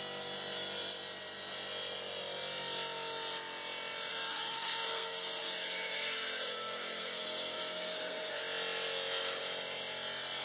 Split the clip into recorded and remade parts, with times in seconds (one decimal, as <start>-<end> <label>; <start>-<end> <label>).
0.0-4.1 recorded; 4.1-8.4 remade; 8.4-10.4 recorded